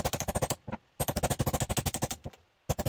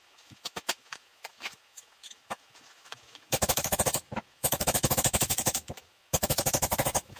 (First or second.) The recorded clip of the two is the first